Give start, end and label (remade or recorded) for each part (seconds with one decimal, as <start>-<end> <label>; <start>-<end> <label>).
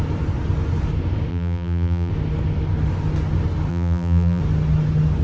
0.0-1.3 recorded; 1.3-2.1 remade; 2.1-3.7 recorded; 3.7-4.4 remade; 4.4-5.2 recorded